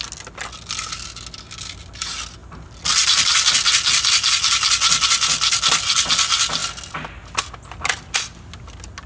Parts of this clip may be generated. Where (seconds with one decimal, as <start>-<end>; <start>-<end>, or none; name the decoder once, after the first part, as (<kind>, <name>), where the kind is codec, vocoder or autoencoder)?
none